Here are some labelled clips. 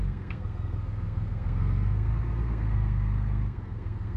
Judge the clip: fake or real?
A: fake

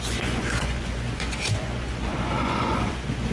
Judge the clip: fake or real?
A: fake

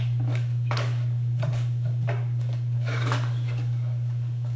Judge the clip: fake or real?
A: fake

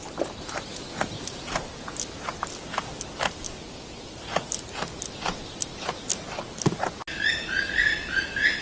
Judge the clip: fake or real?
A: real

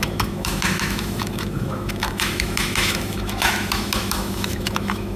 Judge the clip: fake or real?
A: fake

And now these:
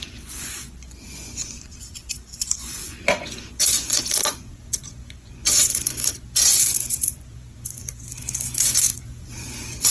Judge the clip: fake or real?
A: fake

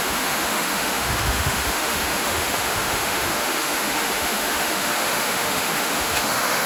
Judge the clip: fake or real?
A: fake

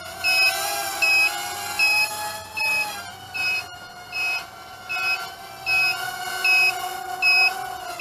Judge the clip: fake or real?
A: real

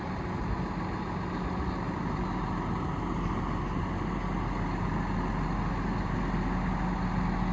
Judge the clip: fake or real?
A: real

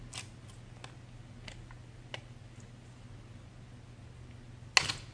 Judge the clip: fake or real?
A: real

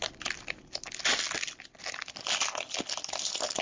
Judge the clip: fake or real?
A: real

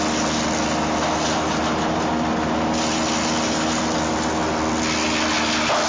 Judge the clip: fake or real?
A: real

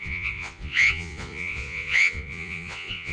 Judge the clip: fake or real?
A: fake